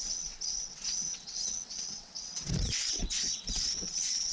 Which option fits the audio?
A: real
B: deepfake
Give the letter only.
B